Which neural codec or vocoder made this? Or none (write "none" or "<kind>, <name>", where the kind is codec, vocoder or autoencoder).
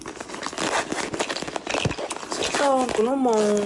none